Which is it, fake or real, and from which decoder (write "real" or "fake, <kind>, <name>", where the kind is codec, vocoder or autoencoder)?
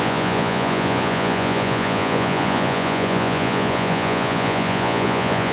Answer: fake, vocoder, Vocos